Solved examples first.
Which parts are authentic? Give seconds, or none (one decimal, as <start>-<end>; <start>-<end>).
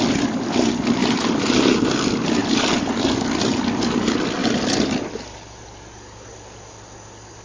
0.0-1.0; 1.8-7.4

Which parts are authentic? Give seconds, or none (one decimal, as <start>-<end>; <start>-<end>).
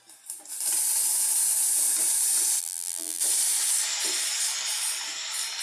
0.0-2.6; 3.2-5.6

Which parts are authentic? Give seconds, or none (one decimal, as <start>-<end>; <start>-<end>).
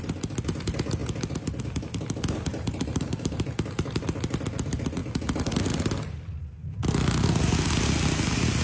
0.0-2.5; 3.5-8.6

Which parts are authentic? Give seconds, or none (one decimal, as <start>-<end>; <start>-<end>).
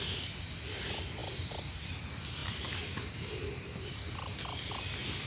0.0-2.4; 3.8-5.3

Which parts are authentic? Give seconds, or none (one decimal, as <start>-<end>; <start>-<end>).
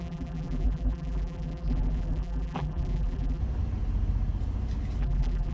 3.4-5.0